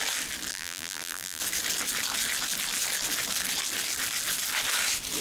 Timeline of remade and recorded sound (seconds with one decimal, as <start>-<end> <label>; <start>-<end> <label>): 0.0-0.5 recorded; 0.5-1.4 remade; 1.4-5.2 recorded